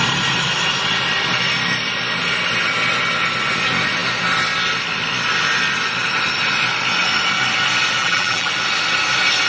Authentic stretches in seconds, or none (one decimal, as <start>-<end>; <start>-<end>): 0.0-8.0; 8.5-9.5